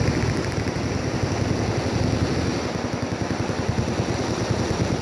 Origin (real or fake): real